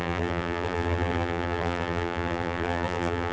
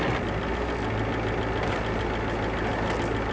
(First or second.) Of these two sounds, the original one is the second